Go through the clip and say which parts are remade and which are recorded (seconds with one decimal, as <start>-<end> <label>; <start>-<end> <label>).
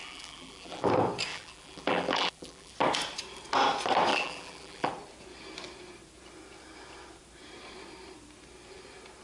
0.0-0.9 remade; 0.9-1.3 recorded; 1.3-2.7 remade; 2.7-4.1 recorded; 4.1-4.9 remade; 4.9-9.2 recorded